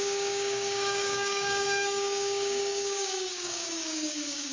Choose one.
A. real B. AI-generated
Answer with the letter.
B